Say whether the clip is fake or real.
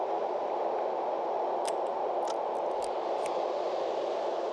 real